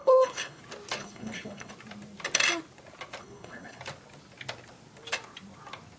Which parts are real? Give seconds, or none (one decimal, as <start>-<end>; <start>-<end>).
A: 0.6-1.0; 1.7-3.2; 3.8-6.0